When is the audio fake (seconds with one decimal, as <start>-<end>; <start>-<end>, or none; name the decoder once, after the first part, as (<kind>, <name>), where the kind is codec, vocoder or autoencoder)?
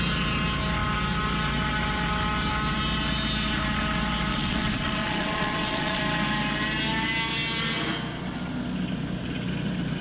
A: 4.3-6.0 (vocoder, WaveNeXt)